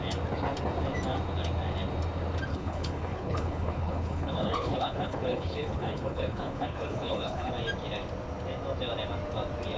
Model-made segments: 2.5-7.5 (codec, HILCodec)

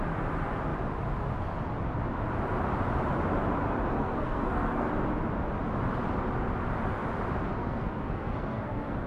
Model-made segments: 3.9-4.9 (codec, SNAC); 7.5-9.1

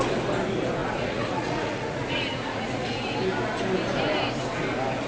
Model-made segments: 0.8-3.1 (vocoder, Vocos)